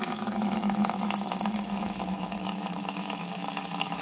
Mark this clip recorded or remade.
remade